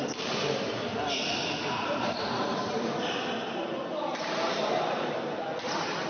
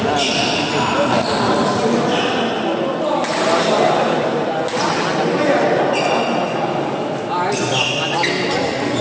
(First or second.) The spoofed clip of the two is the first